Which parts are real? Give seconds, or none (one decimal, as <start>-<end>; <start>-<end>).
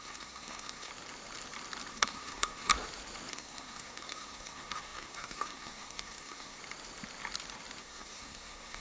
0.9-1.9; 2.7-3.3; 6.6-7.8